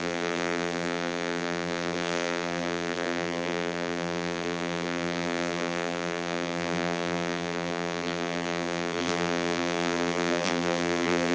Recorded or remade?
remade